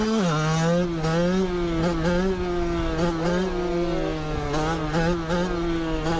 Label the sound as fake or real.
real